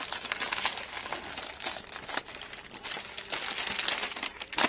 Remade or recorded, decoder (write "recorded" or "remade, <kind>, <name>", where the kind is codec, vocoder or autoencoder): recorded